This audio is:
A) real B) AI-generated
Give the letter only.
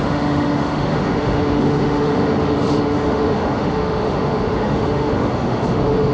B